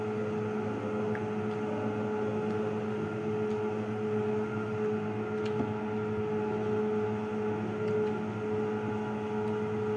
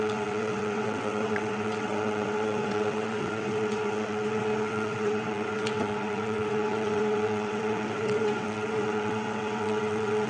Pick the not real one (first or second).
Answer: second